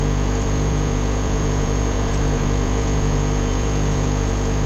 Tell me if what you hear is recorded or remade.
remade